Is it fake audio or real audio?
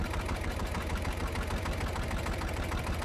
fake